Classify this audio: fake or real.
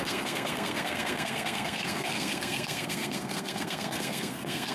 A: fake